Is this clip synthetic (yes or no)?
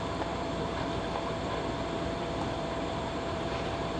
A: yes